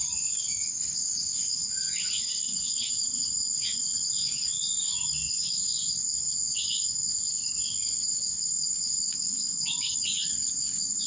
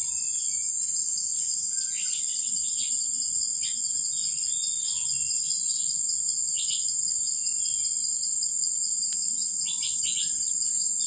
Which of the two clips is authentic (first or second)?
second